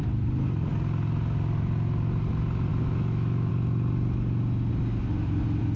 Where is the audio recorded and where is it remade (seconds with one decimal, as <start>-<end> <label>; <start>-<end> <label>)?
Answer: 0.0-2.7 recorded; 2.7-3.5 remade; 3.5-5.8 recorded